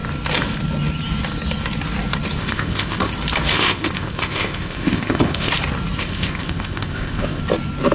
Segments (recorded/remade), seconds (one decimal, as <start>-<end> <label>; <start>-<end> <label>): 0.0-2.4 recorded; 2.4-3.1 remade; 3.1-3.5 recorded; 3.5-5.5 remade; 5.5-6.0 recorded; 6.0-7.4 remade; 7.4-7.9 recorded